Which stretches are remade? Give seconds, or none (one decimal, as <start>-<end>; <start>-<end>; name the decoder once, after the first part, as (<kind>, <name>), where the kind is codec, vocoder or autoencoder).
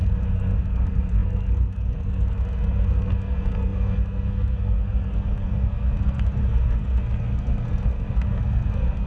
0.0-9.1 (codec, SNAC)